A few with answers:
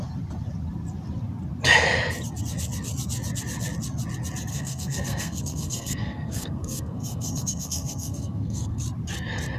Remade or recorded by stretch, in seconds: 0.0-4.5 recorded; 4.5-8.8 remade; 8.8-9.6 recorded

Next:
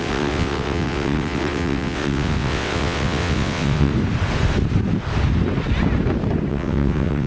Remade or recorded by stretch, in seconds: 0.0-3.9 remade; 3.9-6.5 recorded; 6.5-7.3 remade

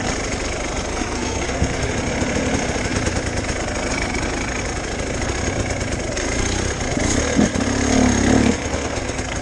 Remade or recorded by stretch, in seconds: 0.0-0.9 recorded; 0.9-1.9 remade; 1.9-8.4 recorded; 8.4-9.4 remade

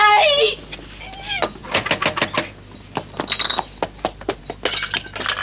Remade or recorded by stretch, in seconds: 0.0-5.4 recorded

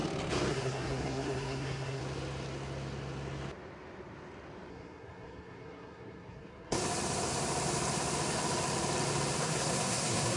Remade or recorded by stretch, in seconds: 0.0-0.5 recorded; 0.5-2.0 remade; 2.0-4.7 recorded; 4.7-6.8 remade; 6.8-9.4 recorded; 9.4-10.4 remade

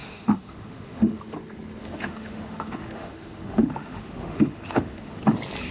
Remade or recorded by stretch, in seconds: 0.0-1.2 remade; 1.2-1.8 recorded; 1.8-5.2 remade; 5.2-5.7 recorded

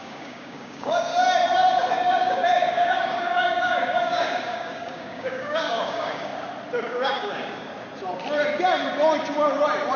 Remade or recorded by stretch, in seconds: 0.0-1.1 remade; 1.1-1.9 recorded; 1.9-6.3 remade; 6.3-6.9 recorded; 6.9-7.7 remade; 7.7-10.0 recorded

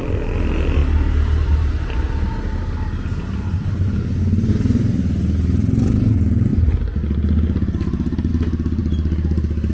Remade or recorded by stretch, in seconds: 0.0-9.7 recorded